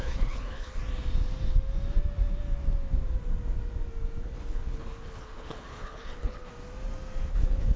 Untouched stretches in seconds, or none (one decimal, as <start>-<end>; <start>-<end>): 0.8-4.2; 6.5-7.3